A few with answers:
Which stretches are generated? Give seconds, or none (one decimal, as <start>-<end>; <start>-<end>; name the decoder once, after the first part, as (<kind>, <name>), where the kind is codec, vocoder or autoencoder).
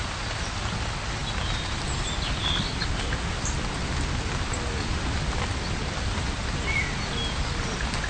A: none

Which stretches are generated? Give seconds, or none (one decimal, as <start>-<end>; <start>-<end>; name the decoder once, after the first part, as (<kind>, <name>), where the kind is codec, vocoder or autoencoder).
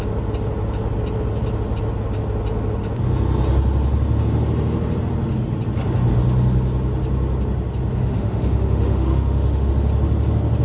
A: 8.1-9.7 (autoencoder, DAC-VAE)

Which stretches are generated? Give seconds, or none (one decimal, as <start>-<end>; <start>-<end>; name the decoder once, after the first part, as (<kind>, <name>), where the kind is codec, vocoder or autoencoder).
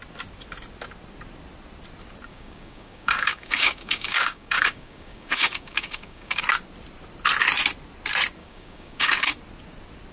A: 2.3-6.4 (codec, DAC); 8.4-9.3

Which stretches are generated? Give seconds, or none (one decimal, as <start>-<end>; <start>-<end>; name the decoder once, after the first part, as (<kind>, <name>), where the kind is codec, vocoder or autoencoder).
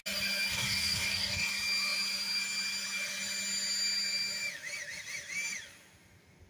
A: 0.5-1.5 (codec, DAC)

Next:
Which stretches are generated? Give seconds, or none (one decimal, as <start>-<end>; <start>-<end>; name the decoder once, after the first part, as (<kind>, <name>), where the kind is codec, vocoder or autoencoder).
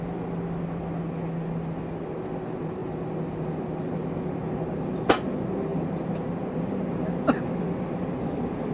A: none